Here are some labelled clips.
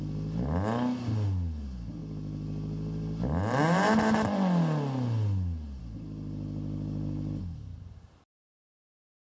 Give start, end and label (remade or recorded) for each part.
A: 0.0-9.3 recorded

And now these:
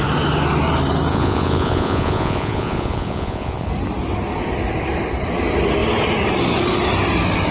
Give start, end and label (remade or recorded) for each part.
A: 0.0-1.1 recorded; 1.1-3.7 remade; 3.7-7.5 recorded

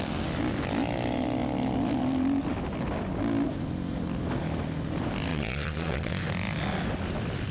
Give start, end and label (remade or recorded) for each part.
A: 0.0-5.3 recorded; 5.3-6.2 remade; 6.2-7.5 recorded

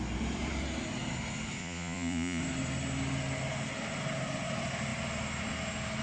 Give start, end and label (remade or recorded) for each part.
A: 0.0-1.6 recorded; 1.6-2.4 remade; 2.4-6.0 recorded

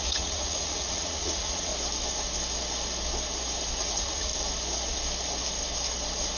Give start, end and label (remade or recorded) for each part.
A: 0.0-1.7 remade; 1.7-3.8 recorded; 3.8-4.3 remade; 4.3-6.4 recorded

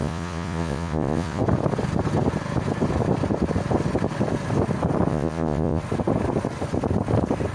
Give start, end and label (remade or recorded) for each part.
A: 0.0-1.4 remade; 1.4-5.1 recorded; 5.1-5.8 remade; 5.8-7.5 recorded